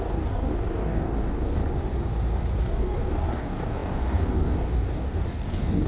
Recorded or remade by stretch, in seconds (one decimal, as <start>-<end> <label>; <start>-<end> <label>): 0.0-1.6 remade; 1.6-2.6 recorded; 2.6-5.9 remade